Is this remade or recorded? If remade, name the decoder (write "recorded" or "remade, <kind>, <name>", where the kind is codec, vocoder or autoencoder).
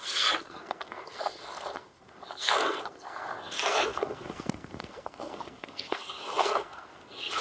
remade, codec, SNAC